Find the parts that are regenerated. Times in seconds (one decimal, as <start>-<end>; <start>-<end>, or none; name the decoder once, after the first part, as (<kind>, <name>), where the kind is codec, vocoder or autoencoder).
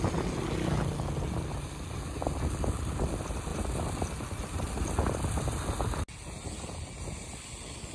none